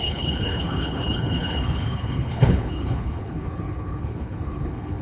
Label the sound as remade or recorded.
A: remade